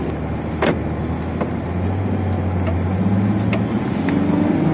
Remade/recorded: recorded